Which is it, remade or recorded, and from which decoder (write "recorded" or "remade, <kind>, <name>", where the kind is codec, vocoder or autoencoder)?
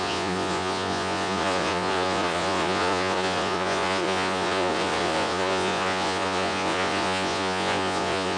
remade, vocoder, Vocos